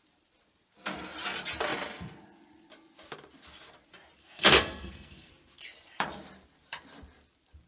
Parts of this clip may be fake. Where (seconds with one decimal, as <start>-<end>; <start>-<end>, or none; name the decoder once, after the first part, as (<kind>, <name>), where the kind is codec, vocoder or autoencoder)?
4.2-5.3 (codec, SNAC)